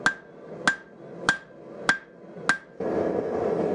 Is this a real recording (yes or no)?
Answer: yes